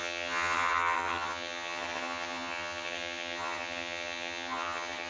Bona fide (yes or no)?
no